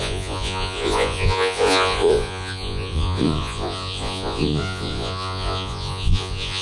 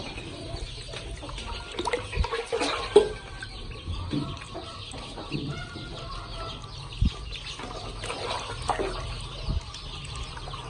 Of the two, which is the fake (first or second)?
first